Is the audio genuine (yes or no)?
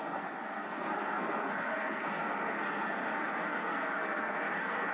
no